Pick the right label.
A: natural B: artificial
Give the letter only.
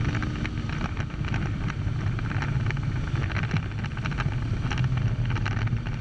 A